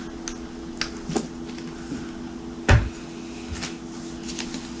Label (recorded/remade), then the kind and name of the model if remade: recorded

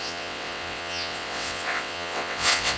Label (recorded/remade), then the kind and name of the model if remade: remade, vocoder, WaveNeXt